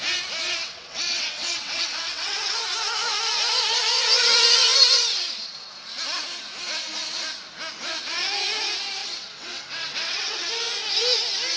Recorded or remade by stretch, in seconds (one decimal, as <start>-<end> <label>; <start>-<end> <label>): 0.0-0.6 recorded; 0.6-2.6 remade; 2.6-9.0 recorded; 9.0-10.5 remade; 10.5-11.6 recorded